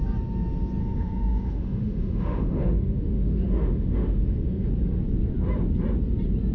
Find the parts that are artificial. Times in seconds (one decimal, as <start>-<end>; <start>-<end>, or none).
0.8-4.7

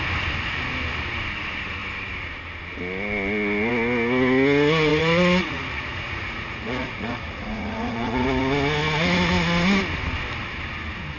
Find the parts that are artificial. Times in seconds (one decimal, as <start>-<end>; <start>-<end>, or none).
4.9-8.4